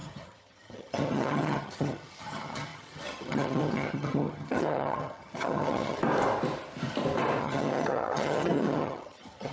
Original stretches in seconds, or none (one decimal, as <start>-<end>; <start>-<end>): 6.0-7.4

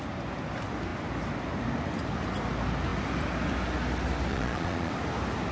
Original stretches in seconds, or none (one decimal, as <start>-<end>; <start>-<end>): 0.0-4.3; 4.9-5.5

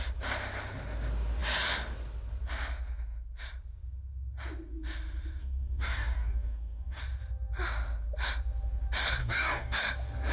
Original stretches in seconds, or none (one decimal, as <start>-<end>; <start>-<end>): 0.0-5.4; 7.0-9.2; 9.8-10.3

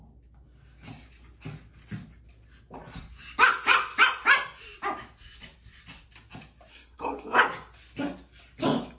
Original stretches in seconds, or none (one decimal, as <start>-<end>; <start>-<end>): 0.0-6.7; 7.4-9.0

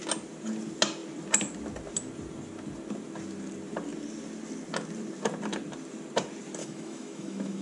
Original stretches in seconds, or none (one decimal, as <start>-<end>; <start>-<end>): 0.0-6.6